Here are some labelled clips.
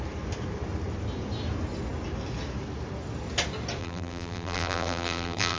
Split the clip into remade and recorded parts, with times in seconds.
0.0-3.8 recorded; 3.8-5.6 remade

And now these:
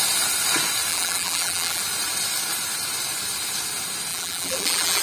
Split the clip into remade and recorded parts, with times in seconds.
0.0-0.9 recorded; 0.9-1.8 remade; 1.8-4.1 recorded; 4.1-5.0 remade

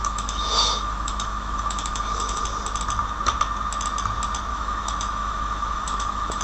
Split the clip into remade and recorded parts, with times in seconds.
0.0-2.4 remade; 2.4-4.5 recorded; 4.5-6.4 remade

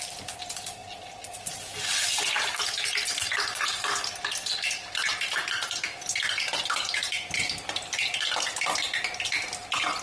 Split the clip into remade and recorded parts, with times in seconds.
0.0-10.0 recorded

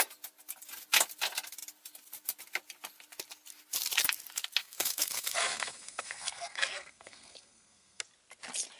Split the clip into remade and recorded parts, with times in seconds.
0.0-4.6 recorded; 4.6-8.0 remade; 8.0-8.8 recorded

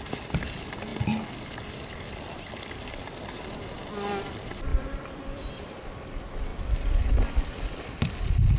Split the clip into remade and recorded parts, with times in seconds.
0.0-8.6 recorded

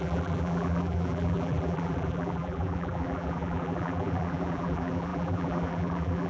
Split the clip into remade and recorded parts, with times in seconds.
0.0-6.3 remade

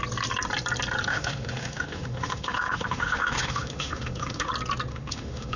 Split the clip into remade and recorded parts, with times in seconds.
0.0-1.1 recorded; 1.1-4.5 remade; 4.5-4.9 recorded; 4.9-5.6 remade